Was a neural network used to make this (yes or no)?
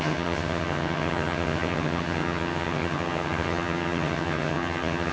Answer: yes